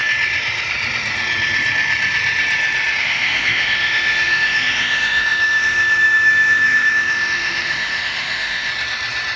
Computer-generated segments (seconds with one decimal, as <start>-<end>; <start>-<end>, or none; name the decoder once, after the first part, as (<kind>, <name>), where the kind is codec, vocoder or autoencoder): 3.0-8.7 (autoencoder, DAC-VAE)